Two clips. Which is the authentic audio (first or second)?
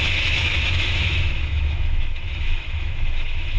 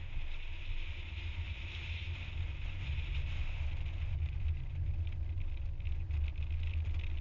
second